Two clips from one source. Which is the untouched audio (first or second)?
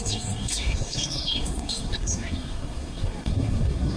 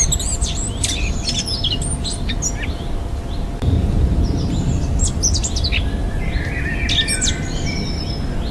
second